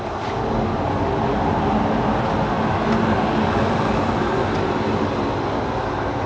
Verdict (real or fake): real